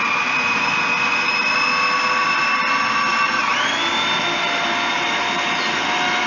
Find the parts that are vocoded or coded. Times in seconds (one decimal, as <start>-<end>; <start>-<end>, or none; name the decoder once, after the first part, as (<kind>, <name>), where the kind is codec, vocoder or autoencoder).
none